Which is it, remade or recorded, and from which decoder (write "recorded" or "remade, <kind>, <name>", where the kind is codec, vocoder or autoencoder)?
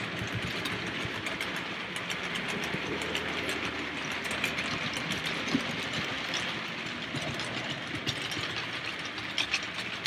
recorded